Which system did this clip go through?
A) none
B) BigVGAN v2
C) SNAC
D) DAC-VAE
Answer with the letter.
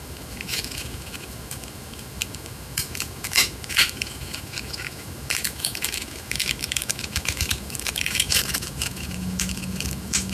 D